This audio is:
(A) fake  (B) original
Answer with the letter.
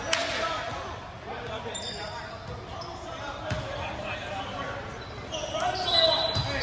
B